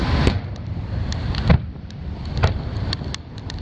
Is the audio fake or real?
real